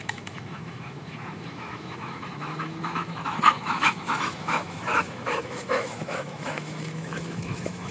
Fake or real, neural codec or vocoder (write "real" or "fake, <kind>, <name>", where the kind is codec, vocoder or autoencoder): fake, autoencoder, DAC-VAE